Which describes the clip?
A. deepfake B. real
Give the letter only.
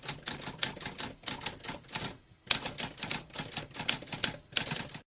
B